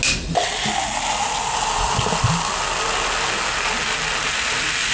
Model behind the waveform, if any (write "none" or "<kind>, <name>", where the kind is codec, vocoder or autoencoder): none